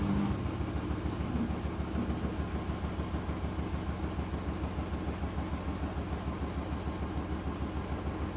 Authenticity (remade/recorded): recorded